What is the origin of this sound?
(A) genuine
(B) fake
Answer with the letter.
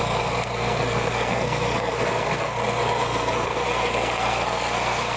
B